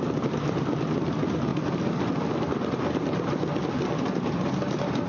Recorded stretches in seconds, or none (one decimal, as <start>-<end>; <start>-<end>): 0.0-5.1